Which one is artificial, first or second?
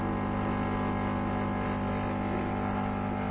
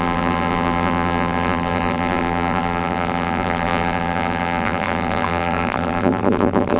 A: second